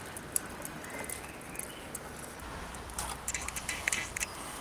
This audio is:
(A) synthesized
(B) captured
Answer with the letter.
B